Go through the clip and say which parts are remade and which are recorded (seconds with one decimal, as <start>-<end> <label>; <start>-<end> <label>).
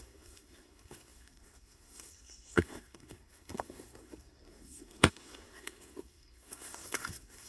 0.0-7.5 remade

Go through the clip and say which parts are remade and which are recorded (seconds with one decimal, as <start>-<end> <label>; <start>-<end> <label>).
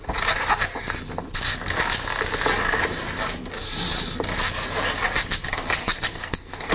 0.0-5.8 recorded; 5.8-6.7 remade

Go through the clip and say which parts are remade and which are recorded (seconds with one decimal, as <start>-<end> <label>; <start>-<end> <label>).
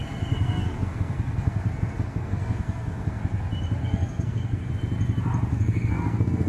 0.0-3.2 remade; 3.2-3.8 recorded; 3.8-4.7 remade; 4.7-5.5 recorded; 5.5-6.5 remade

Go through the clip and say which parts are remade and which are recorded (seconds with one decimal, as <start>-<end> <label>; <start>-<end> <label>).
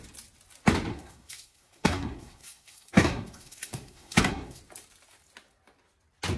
0.0-0.9 recorded; 0.9-4.6 remade; 4.6-6.4 recorded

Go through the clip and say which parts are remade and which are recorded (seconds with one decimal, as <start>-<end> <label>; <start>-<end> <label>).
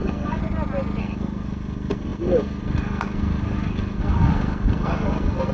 0.0-0.4 remade; 0.4-1.0 recorded; 1.0-5.5 remade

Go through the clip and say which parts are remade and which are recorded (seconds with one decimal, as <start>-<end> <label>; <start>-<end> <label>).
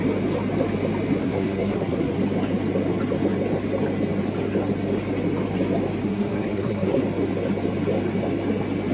0.0-1.2 recorded; 1.2-2.1 remade; 2.1-6.0 recorded; 6.0-7.0 remade; 7.0-8.9 recorded